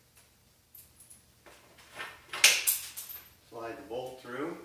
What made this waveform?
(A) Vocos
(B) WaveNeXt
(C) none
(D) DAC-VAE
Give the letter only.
C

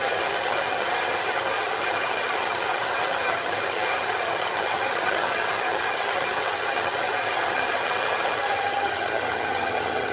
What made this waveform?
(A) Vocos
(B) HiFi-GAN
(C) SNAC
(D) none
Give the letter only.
B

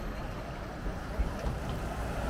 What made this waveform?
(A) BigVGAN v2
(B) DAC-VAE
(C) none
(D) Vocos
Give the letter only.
C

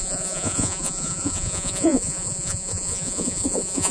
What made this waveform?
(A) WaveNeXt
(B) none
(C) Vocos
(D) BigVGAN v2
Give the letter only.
C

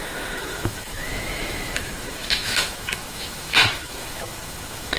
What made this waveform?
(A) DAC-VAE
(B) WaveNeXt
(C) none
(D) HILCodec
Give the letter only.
A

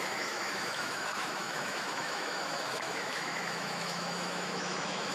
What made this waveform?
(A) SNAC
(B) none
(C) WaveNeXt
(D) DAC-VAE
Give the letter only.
D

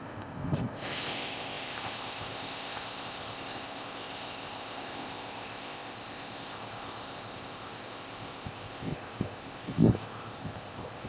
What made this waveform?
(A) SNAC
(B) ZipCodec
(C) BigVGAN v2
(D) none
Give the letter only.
B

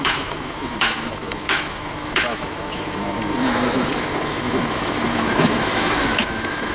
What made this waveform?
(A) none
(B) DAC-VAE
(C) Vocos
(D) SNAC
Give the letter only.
B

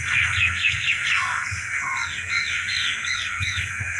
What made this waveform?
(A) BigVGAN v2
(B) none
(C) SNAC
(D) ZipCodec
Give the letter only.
C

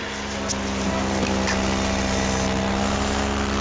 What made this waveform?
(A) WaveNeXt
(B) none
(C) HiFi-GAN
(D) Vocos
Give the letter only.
B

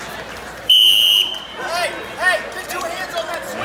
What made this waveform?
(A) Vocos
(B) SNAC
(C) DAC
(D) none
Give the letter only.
D